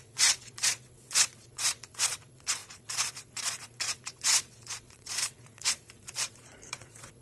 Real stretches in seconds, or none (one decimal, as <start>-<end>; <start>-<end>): none